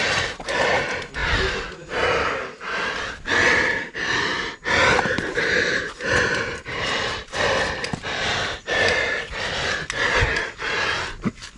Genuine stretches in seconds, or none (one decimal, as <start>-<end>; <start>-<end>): 0.0-11.6